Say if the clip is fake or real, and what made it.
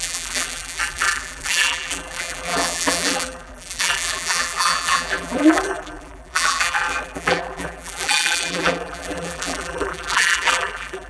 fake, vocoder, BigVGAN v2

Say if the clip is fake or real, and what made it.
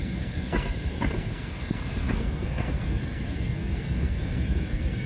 fake, codec, SNAC